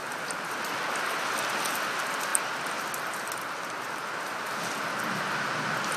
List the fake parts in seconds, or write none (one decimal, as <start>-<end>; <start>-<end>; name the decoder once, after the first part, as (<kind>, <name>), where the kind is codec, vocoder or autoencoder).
none